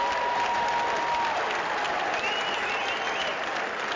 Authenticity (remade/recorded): recorded